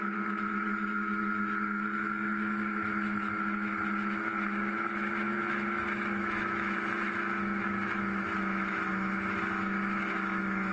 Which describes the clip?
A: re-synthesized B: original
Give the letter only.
A